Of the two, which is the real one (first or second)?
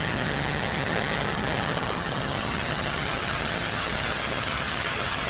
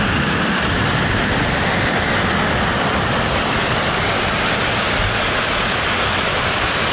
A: second